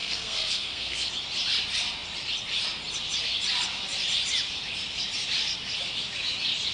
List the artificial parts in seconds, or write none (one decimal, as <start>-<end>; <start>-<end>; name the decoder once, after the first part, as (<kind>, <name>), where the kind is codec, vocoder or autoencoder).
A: 0.0-1.1 (codec, SNAC)

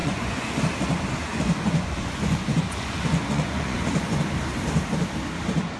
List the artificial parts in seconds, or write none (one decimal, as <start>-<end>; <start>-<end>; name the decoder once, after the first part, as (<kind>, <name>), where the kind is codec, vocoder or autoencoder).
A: 0.0-0.6 (vocoder, Vocos); 1.3-4.2

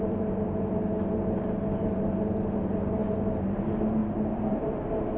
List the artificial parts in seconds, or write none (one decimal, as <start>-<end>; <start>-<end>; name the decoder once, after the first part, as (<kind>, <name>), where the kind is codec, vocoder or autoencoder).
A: 0.0-4.0 (vocoder, BigVGAN v2); 4.5-5.2

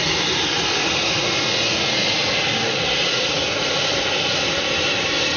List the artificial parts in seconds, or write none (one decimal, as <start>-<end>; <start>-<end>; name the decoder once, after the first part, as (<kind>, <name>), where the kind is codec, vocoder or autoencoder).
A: 0.8-2.1 (vocoder, Vocos); 3.0-3.7

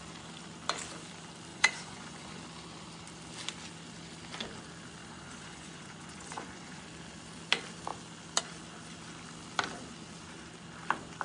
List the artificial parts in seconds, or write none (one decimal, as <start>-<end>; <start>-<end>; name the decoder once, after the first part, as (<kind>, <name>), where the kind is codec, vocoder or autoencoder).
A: 1.5-2.4 (vocoder, Vocos); 5.0-6.8

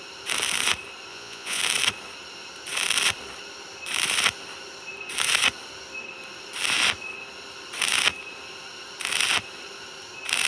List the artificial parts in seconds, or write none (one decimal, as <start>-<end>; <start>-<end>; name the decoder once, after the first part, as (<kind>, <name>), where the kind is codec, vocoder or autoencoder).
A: 1.1-1.6 (vocoder, Vocos)

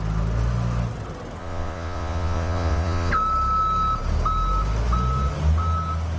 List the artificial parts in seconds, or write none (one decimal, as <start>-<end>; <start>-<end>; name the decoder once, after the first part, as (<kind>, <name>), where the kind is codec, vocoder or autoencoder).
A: 1.4-3.1 (vocoder, Vocos)